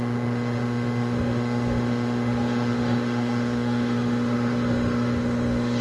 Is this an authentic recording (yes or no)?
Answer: no